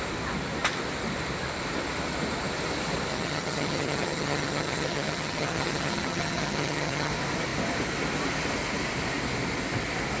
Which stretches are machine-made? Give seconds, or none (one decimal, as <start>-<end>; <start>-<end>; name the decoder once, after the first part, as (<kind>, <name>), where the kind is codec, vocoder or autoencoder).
3.1-7.1 (vocoder, HiFi-GAN)